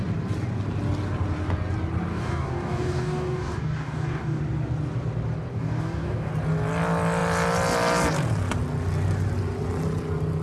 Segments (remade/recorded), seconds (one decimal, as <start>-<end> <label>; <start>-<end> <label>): 0.0-2.1 recorded; 2.1-4.4 remade; 4.4-5.5 recorded; 5.5-6.3 remade; 6.3-10.4 recorded